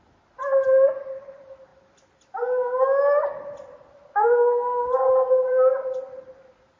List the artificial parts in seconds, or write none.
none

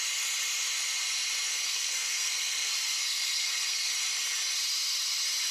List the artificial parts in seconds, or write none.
1.5-3.9 (codec, SNAC)

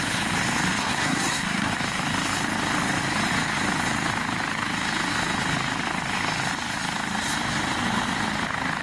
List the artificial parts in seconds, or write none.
0.8-1.7 (codec, SNAC)